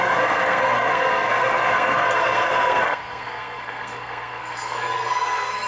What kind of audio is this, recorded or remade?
remade